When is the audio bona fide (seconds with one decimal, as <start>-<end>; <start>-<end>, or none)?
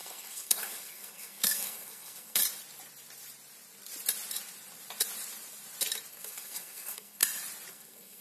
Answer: 2.4-6.1; 7.2-7.7